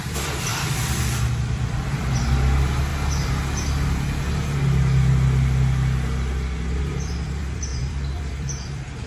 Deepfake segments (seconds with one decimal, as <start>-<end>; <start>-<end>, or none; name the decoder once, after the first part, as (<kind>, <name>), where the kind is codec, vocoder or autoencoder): 0.0-2.9 (vocoder, BigVGAN v2); 6.8-9.1